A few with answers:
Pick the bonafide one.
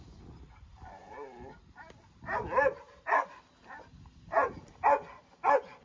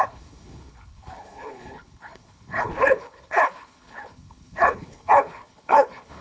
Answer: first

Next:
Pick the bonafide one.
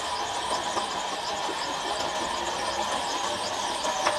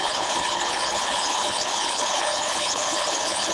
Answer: first